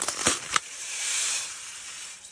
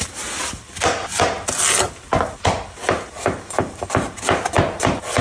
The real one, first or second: second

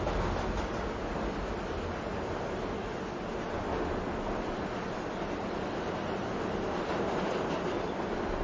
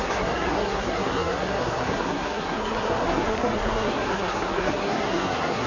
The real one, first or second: first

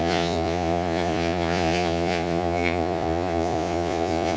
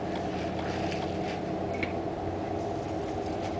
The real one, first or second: second